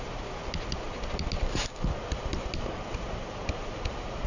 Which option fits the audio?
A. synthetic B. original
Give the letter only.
B